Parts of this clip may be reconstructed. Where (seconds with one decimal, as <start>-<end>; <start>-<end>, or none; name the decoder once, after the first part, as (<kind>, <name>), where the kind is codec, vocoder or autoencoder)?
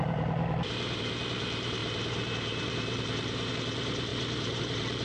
0.0-5.0 (vocoder, BigVGAN v2)